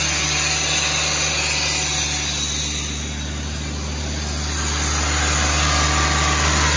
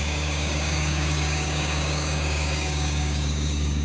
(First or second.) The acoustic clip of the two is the first